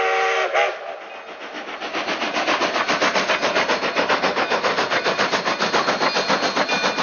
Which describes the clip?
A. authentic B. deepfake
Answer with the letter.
A